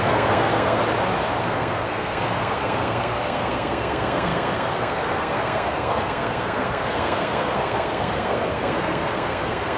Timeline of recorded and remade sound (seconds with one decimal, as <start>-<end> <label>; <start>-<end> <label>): 0.0-0.8 remade; 0.8-1.4 recorded; 1.4-9.8 remade